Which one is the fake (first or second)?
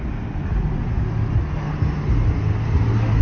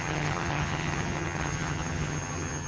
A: second